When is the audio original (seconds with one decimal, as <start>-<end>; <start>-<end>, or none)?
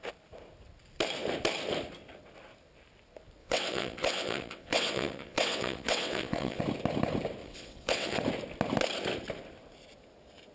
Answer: 0.0-3.4; 6.6-7.4; 8.2-10.5